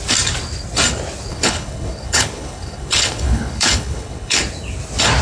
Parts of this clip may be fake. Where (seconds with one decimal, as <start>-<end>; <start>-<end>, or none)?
1.3-4.4